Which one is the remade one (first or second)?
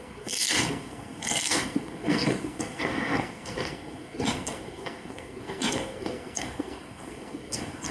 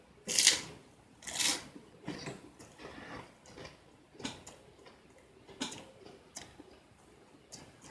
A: first